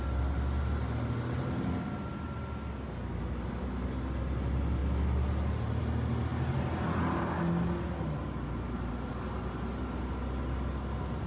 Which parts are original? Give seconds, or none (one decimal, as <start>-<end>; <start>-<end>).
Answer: 0.0-11.3